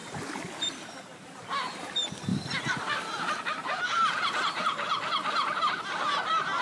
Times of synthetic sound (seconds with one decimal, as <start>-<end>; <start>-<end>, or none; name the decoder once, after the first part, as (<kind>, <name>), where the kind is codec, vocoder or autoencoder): 0.0-1.9 (vocoder, BigVGAN v2); 3.6-5.7